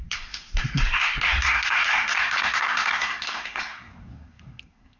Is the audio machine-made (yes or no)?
yes